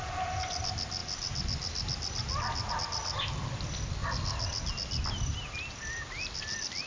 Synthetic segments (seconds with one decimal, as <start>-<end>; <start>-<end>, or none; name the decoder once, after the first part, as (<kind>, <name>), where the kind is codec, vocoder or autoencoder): none